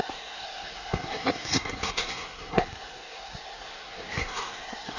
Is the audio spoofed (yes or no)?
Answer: yes